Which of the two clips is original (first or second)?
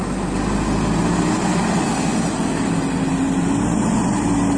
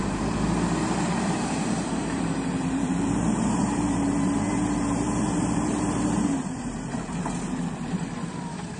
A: first